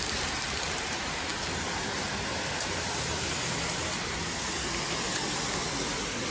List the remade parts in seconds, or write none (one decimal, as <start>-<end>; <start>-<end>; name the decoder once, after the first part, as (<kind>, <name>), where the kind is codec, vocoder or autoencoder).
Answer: none